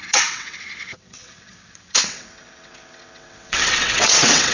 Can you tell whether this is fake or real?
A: fake